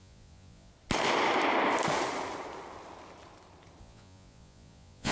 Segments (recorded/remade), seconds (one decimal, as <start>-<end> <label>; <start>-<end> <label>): 0.0-0.7 remade; 0.7-3.8 recorded; 3.8-5.1 remade